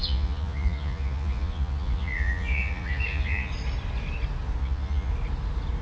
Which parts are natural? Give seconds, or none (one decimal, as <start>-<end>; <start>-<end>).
3.5-4.6; 5.1-5.8